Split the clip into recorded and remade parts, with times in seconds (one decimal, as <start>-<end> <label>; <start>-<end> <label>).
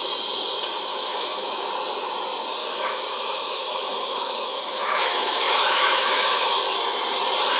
0.0-0.9 recorded; 0.9-1.7 remade; 1.7-2.6 recorded; 2.6-6.6 remade; 6.6-7.6 recorded